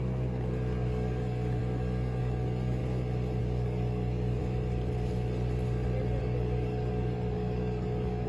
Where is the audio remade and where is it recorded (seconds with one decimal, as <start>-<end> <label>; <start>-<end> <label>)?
0.0-2.8 remade; 2.8-3.4 recorded; 3.4-4.4 remade; 4.4-6.2 recorded; 6.2-8.3 remade

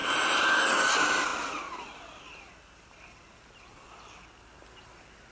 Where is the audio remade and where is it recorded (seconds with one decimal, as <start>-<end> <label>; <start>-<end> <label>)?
0.0-5.3 recorded

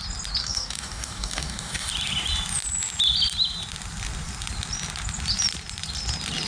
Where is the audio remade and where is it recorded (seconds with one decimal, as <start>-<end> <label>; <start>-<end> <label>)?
0.0-0.4 recorded; 0.4-1.9 remade; 1.9-6.5 recorded

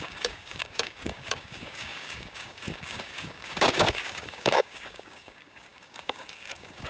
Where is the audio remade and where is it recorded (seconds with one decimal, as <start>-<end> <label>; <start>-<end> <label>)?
0.0-6.9 remade